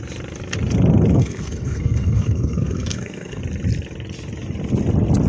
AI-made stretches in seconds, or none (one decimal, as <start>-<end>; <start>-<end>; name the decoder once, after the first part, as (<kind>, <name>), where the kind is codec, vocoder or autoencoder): 1.1-3.4 (codec, SNAC)